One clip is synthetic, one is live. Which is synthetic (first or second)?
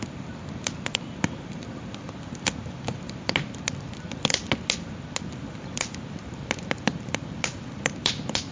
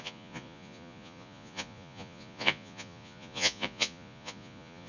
second